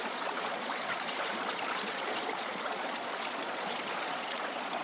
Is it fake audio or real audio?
fake